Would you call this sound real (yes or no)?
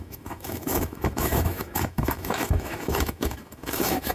no